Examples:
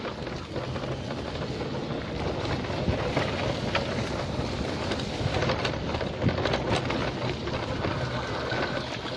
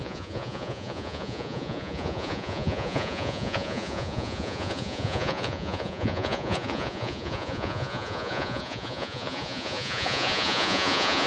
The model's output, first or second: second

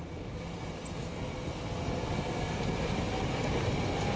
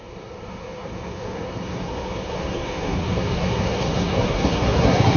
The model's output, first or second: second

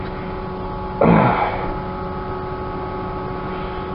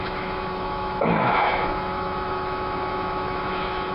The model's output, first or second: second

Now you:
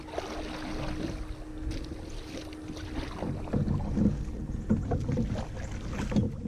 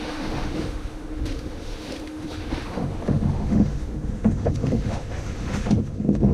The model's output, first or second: second